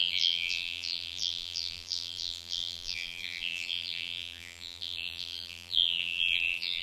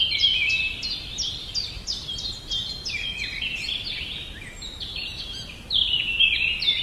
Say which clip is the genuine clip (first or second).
second